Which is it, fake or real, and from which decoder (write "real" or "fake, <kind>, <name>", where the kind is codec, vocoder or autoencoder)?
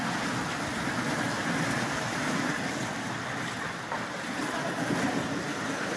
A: real